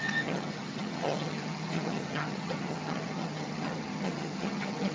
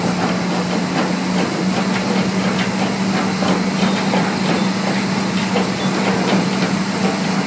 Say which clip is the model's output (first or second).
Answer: first